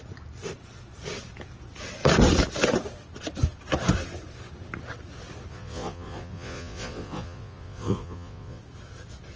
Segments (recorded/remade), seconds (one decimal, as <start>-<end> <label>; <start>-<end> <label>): 0.0-5.5 recorded; 5.5-8.6 remade; 8.6-9.4 recorded